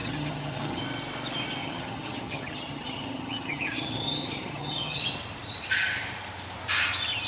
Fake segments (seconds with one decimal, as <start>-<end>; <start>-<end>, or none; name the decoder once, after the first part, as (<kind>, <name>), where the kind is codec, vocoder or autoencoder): 0.0-0.8 (vocoder, HiFi-GAN); 1.6-5.0